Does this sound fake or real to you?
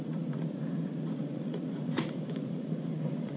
fake